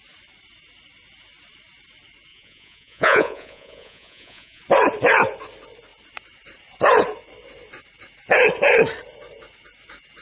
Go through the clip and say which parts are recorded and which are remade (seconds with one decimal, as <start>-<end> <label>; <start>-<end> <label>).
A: 0.0-2.3 recorded; 2.3-4.6 remade; 4.6-10.2 recorded